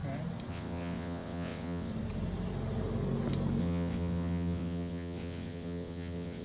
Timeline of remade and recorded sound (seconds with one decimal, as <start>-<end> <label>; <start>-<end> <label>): 0.0-0.5 recorded; 0.5-1.9 remade; 1.9-3.6 recorded; 3.6-6.4 remade